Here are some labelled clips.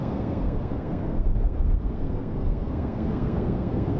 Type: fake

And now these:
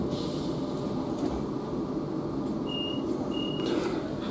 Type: real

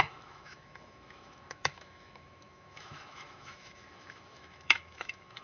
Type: fake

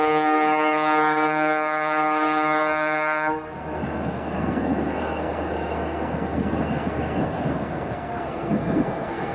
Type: fake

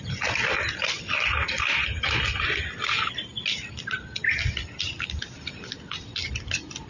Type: real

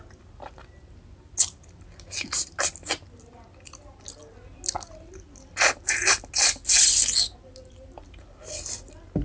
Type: real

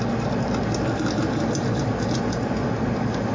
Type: real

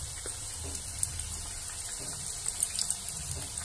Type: real